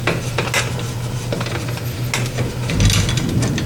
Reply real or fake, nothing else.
real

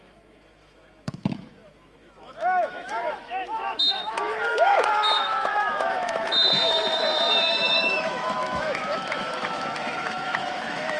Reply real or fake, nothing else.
fake